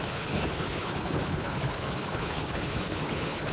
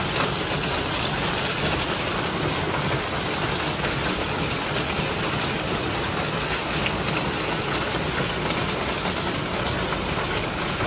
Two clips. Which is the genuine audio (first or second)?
second